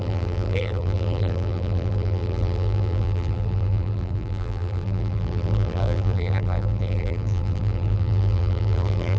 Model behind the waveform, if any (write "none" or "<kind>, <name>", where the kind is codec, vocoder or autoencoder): vocoder, BigVGAN v2